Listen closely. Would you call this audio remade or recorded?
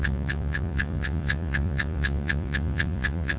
remade